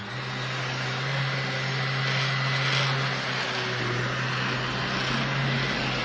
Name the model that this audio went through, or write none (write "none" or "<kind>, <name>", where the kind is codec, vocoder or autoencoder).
none